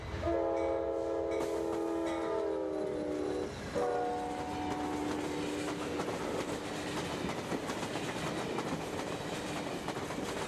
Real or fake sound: real